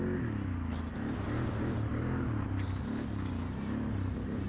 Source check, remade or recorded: recorded